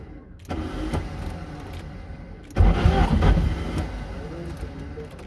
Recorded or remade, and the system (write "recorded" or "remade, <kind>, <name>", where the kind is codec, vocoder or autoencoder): recorded